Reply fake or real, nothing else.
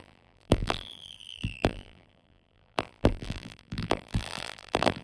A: fake